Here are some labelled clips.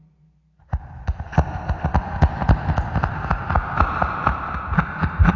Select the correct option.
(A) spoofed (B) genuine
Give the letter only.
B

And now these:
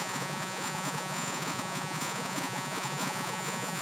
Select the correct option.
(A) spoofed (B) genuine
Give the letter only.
A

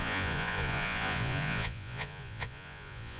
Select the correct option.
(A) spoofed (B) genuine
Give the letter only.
A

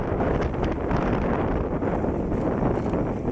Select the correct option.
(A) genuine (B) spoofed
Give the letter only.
A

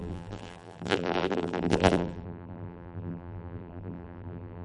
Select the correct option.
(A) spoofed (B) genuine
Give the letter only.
A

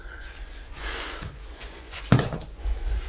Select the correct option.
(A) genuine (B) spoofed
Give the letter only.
B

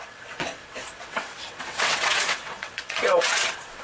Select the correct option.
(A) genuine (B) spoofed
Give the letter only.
B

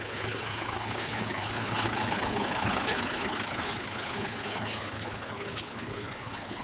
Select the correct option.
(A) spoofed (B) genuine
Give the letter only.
A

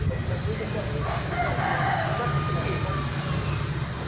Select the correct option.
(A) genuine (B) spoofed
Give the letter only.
A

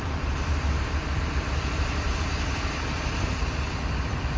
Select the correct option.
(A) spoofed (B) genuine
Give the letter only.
A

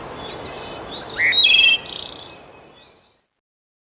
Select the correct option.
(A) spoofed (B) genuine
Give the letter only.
B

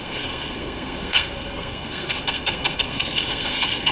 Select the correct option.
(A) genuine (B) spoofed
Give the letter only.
B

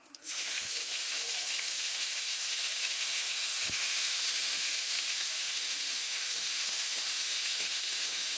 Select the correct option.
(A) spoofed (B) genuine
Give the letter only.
A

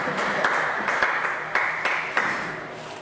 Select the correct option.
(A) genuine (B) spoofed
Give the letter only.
B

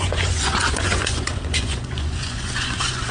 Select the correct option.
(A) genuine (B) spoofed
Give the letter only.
B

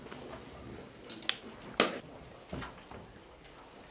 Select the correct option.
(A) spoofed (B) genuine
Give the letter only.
B